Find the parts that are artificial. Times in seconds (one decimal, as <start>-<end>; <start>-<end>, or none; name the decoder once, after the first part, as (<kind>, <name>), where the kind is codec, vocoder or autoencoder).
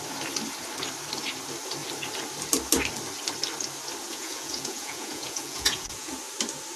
4.0-6.1 (vocoder, Vocos)